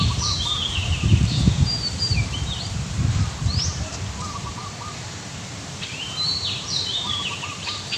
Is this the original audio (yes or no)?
no